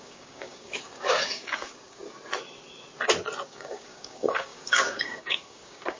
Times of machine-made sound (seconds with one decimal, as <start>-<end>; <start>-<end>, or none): 0.0-2.0; 3.5-6.0